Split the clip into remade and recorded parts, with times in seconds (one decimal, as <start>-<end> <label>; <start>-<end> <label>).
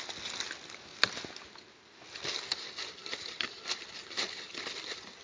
0.0-5.2 recorded